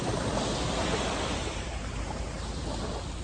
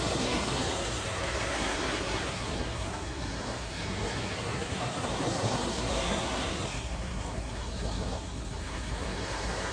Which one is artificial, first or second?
second